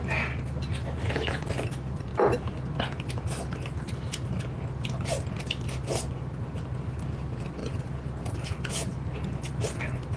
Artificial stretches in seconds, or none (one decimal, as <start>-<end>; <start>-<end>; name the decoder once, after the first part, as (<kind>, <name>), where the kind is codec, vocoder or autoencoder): none